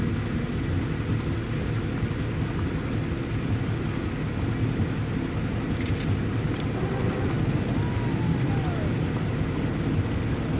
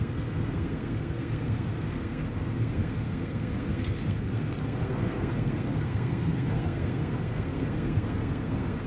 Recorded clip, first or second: first